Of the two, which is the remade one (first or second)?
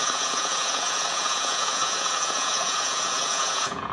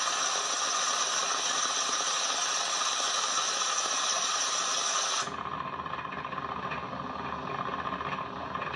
first